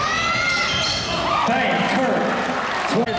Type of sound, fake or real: real